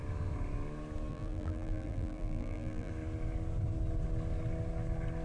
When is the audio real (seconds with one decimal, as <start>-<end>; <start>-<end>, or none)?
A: 0.0-1.1; 2.9-5.2